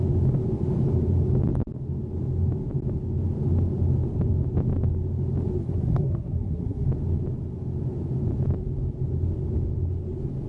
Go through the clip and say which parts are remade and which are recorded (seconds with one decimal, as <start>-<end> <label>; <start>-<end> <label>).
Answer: 0.0-5.6 recorded; 5.6-6.9 remade; 6.9-10.5 recorded